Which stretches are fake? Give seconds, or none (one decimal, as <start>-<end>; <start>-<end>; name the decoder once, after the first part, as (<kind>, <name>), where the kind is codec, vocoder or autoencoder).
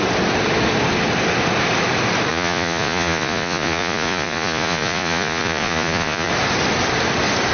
2.3-6.3 (vocoder, Vocos)